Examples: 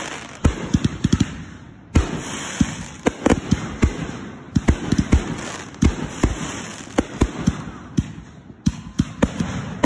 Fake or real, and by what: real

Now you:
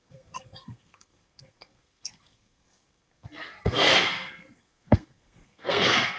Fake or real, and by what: fake, codec, SNAC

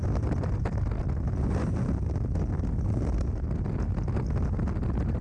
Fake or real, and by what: real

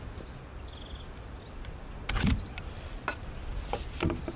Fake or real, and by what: real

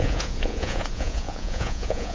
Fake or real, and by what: fake, vocoder, Vocos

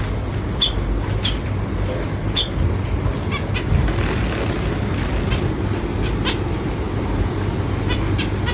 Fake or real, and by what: real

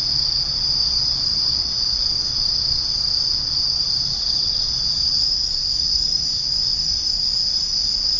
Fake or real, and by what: real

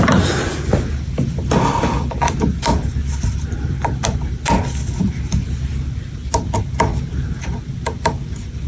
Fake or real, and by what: real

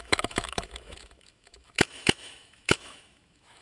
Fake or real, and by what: fake, autoencoder, DAC-VAE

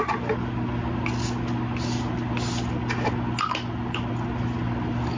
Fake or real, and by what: real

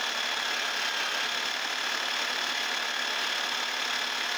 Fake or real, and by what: real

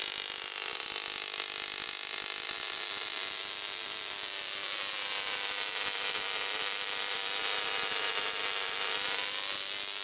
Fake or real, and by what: real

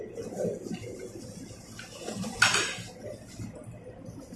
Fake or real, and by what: real